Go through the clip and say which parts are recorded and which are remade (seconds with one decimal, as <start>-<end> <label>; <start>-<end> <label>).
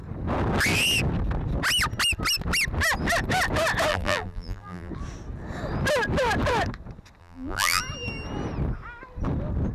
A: 0.0-3.9 recorded; 3.9-4.9 remade; 4.9-7.2 recorded; 7.2-7.8 remade; 7.8-9.7 recorded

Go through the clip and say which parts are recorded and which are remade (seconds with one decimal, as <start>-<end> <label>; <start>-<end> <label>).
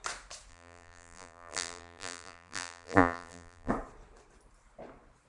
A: 0.0-0.5 recorded; 0.5-3.7 remade; 3.7-5.3 recorded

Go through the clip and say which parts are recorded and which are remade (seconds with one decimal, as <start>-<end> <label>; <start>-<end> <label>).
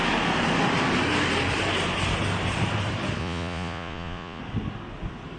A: 0.0-3.2 recorded; 3.2-4.4 remade; 4.4-5.4 recorded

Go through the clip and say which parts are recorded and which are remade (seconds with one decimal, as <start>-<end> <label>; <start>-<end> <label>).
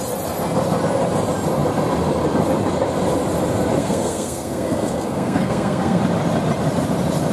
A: 0.0-3.8 recorded; 3.8-6.0 remade; 6.0-7.3 recorded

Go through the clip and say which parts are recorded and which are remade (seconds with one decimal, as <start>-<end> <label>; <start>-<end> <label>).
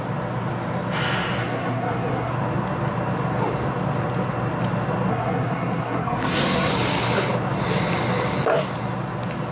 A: 0.0-1.4 recorded; 1.4-2.3 remade; 2.3-5.1 recorded; 5.1-6.7 remade; 6.7-9.5 recorded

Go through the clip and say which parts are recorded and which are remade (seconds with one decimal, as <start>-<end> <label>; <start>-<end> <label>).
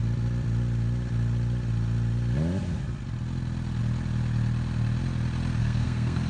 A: 0.0-5.6 recorded; 5.6-6.3 remade